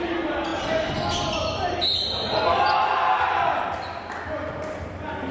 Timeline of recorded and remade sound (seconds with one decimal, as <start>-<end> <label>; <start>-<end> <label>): 0.0-5.3 recorded